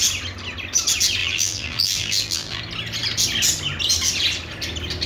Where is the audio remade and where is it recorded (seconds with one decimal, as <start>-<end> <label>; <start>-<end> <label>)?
0.0-1.2 recorded; 1.2-2.6 remade; 2.6-5.1 recorded